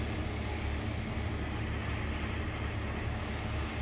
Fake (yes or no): no